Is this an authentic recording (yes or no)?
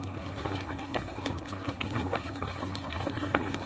no